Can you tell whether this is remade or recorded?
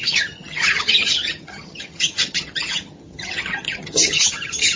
remade